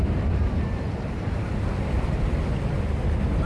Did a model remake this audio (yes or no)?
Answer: no